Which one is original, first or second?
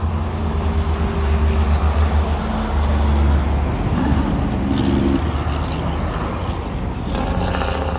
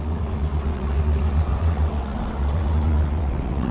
first